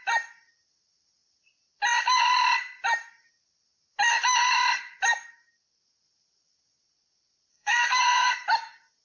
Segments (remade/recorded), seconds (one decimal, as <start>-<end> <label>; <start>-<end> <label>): 0.0-7.5 recorded; 7.5-8.3 remade; 8.3-9.0 recorded